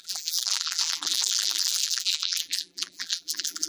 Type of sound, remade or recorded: remade